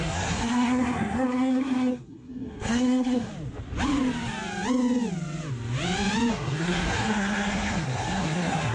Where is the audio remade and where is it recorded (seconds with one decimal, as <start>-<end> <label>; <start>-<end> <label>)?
0.0-3.3 remade; 3.3-6.3 recorded; 6.3-8.7 remade

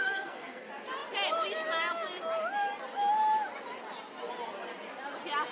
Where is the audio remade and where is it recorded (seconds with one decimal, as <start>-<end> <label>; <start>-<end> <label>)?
0.0-0.6 remade; 0.6-5.5 recorded

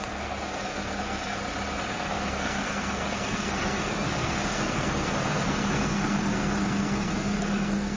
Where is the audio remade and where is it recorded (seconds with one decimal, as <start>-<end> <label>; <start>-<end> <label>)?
0.0-1.4 remade; 1.4-1.9 recorded; 1.9-8.0 remade

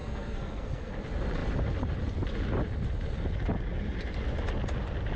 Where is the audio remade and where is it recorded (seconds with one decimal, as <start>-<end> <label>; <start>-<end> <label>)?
0.0-0.9 remade; 0.9-5.2 recorded

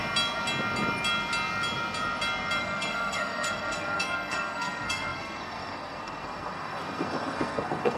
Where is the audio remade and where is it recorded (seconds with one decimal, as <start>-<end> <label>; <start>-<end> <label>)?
0.0-2.6 recorded; 2.6-8.0 remade